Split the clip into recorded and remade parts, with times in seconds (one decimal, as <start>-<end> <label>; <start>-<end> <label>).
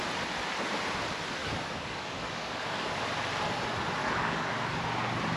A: 0.0-1.4 recorded; 1.4-3.0 remade; 3.0-4.0 recorded; 4.0-4.5 remade; 4.5-5.4 recorded